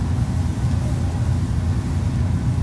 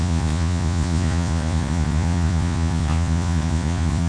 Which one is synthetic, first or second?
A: second